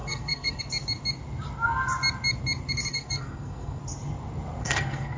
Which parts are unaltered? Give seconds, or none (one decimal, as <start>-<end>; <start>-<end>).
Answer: 0.6-2.9; 3.8-4.6